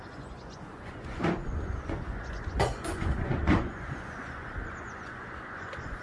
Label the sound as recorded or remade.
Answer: remade